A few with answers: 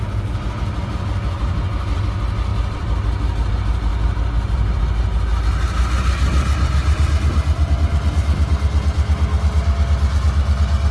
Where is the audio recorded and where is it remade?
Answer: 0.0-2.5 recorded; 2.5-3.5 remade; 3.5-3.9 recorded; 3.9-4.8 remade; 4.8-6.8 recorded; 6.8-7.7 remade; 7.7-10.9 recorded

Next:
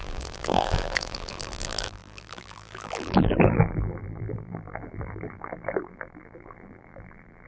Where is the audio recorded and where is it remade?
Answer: 0.0-7.5 remade

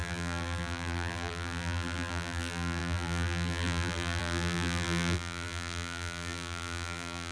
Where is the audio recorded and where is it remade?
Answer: 0.0-7.3 remade

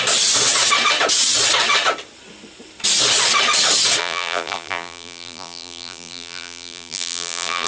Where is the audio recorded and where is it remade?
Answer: 0.0-4.0 recorded; 4.0-7.7 remade

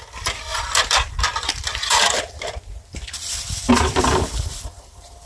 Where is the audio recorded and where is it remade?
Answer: 0.0-5.3 remade

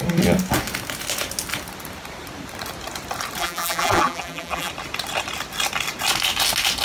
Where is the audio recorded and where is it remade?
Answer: 0.0-3.4 recorded; 3.4-4.7 remade; 4.7-6.8 recorded

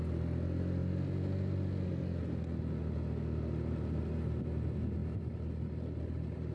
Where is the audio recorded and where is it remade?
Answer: 0.0-6.5 recorded

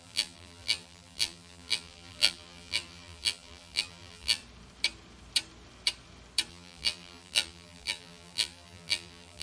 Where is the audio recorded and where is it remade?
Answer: 0.0-4.4 remade; 4.4-6.5 recorded; 6.5-9.4 remade